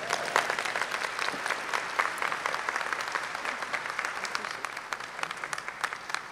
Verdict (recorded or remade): recorded